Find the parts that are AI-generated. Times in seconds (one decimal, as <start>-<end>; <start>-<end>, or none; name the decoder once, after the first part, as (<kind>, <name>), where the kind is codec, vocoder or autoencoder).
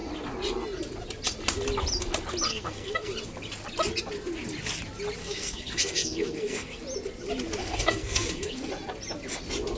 2.5-3.1 (codec, SNAC); 5.2-6.8; 7.6-8.7